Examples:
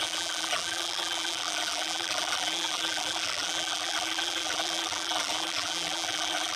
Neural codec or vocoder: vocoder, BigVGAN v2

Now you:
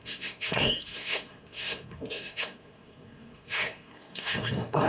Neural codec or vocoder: codec, SNAC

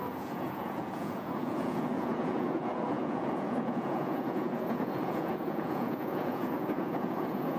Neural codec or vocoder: vocoder, Vocos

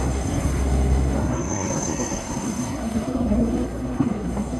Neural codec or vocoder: codec, SNAC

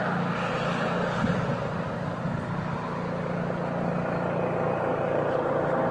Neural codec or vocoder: none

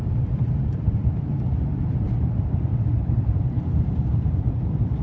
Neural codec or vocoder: vocoder, BigVGAN v2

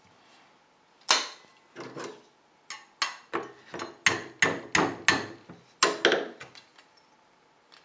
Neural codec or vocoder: none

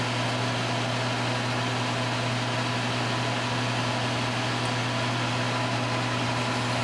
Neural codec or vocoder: none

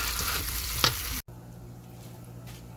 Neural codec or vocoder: none